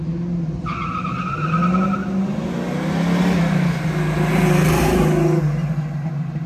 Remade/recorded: recorded